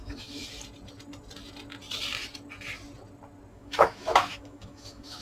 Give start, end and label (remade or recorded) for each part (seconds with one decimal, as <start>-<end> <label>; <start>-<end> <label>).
0.0-0.4 remade; 0.4-3.5 recorded; 3.5-5.2 remade